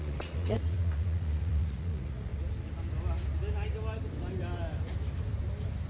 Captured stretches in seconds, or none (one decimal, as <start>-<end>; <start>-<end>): 2.3-5.9